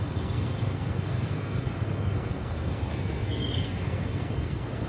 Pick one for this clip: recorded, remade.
remade